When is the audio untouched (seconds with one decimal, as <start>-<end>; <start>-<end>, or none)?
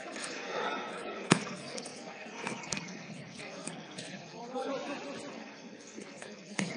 4.7-5.3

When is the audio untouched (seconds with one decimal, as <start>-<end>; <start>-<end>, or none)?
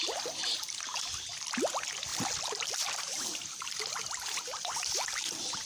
0.0-5.7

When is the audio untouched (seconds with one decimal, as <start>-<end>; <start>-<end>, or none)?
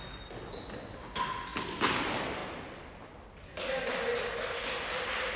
0.0-5.4